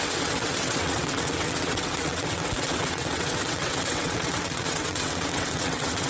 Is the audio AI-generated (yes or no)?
yes